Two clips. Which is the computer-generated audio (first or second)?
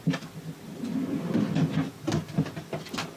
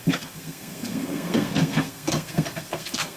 second